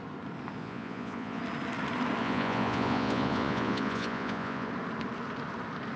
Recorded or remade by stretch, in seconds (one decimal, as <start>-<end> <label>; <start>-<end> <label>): 0.0-0.6 recorded; 0.6-1.4 remade; 1.4-2.2 recorded; 2.2-4.7 remade; 4.7-6.0 recorded